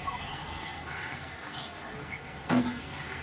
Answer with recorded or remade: remade